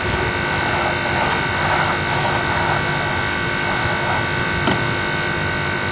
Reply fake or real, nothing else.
real